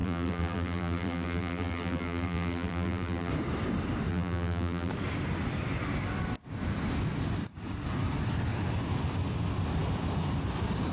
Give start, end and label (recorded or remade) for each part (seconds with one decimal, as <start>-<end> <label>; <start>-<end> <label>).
0.0-3.3 remade; 3.3-4.1 recorded; 4.1-4.9 remade; 4.9-10.9 recorded

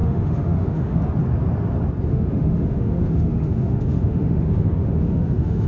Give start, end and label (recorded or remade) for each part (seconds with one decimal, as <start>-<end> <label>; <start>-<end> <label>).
0.0-1.0 remade; 1.0-2.1 recorded; 2.1-5.7 remade

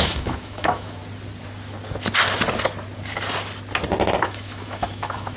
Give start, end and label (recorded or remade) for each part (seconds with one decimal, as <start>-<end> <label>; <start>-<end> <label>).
0.0-1.0 remade; 1.0-4.2 recorded; 4.2-5.4 remade

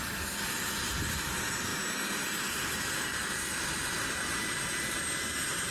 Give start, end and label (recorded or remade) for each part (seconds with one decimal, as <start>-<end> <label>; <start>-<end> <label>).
0.0-3.1 recorded; 3.1-5.0 remade; 5.0-5.7 recorded

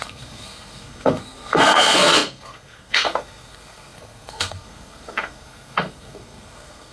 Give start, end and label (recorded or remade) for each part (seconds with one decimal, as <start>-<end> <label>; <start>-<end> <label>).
0.0-6.9 remade